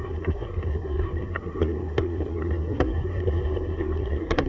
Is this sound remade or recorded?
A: remade